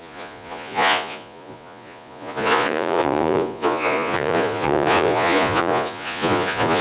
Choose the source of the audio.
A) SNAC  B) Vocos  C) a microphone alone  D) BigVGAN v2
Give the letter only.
B